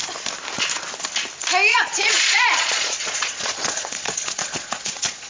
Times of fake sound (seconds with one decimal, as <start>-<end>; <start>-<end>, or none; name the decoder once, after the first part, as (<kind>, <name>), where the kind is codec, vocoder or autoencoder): 1.7-5.3 (vocoder, Vocos)